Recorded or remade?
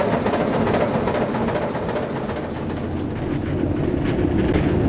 recorded